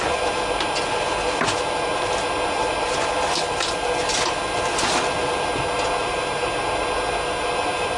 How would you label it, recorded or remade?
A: recorded